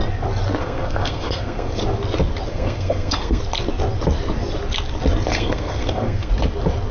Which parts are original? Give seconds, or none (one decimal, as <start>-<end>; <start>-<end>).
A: 0.0-0.6; 1.8-2.5; 3.4-5.3; 6.3-6.9